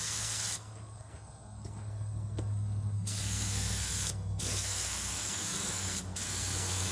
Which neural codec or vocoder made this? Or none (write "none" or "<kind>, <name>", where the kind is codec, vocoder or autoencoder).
codec, SNAC